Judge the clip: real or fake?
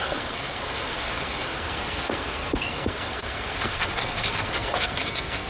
fake